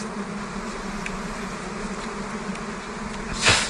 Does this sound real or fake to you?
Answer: real